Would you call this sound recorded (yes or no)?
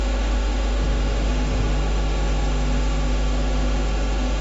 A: no